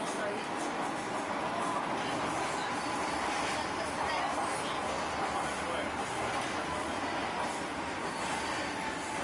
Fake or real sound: real